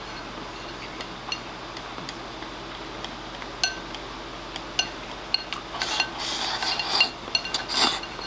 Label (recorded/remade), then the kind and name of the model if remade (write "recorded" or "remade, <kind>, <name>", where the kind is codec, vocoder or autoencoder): recorded